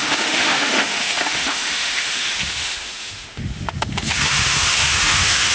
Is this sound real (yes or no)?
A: no